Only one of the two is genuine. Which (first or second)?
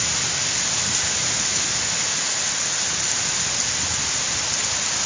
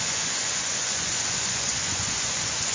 first